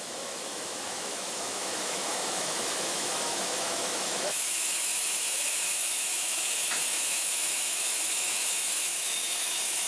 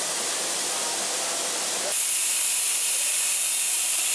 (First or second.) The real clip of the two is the second